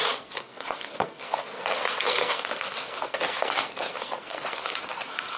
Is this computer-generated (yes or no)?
yes